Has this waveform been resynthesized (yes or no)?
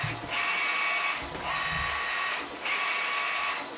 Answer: no